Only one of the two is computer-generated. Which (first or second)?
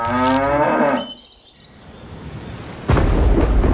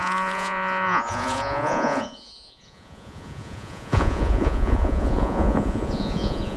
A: second